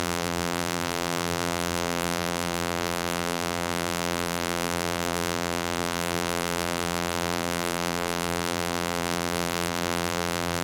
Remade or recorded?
remade